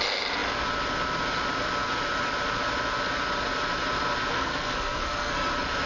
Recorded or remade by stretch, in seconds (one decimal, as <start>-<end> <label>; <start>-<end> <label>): 0.0-4.3 recorded; 4.3-5.5 remade; 5.5-5.9 recorded